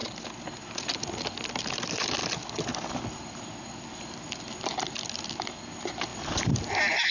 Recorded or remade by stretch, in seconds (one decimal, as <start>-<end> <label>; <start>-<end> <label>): 0.0-7.1 recorded